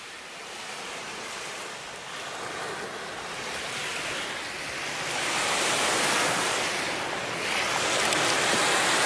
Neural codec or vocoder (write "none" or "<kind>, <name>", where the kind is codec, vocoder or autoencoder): none